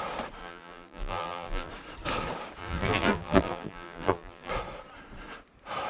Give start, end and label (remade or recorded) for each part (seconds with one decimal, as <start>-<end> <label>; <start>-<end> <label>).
0.0-0.4 recorded; 0.4-1.7 remade; 1.7-2.6 recorded; 2.6-4.5 remade; 4.5-5.9 recorded